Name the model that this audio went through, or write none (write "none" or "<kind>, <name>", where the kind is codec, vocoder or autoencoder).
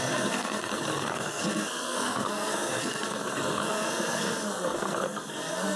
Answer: codec, SNAC